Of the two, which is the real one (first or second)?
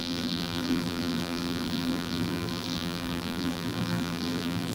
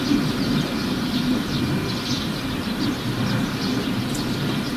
second